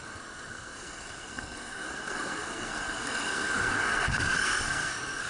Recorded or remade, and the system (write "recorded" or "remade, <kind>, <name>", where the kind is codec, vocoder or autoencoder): remade, codec, SNAC